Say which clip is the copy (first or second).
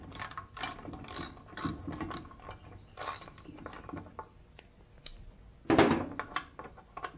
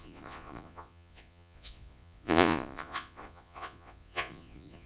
second